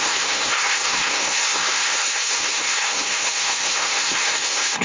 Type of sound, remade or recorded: remade